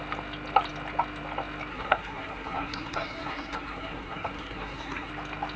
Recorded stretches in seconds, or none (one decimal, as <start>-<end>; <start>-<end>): 0.0-1.7; 5.1-5.6